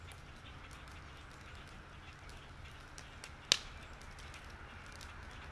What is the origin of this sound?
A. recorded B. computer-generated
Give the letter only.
A